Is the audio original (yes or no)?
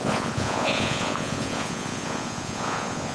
no